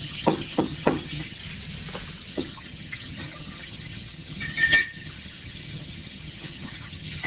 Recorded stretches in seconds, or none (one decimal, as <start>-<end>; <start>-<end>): 1.4-2.3